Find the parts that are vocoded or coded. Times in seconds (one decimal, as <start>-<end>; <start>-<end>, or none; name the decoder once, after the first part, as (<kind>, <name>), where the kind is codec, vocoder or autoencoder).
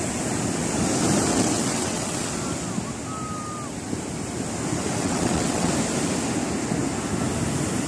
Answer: 1.3-2.3 (vocoder, WaveNeXt); 5.0-5.7